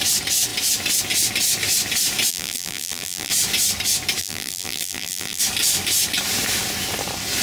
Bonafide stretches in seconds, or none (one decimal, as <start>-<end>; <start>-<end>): 0.0-2.3; 3.3-4.2; 5.4-7.4